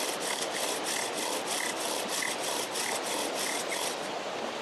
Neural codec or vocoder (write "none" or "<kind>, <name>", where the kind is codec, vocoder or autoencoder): none